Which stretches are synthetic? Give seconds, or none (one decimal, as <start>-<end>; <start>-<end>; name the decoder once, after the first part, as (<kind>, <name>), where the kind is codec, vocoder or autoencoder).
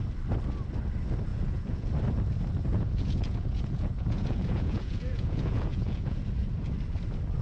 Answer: 1.3-1.9 (vocoder, Vocos); 2.7-6.2